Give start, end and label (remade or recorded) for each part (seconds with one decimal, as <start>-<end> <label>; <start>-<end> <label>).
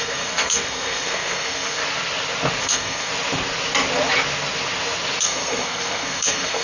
0.0-1.8 remade; 1.8-2.6 recorded; 2.6-3.1 remade; 3.1-5.2 recorded; 5.2-6.6 remade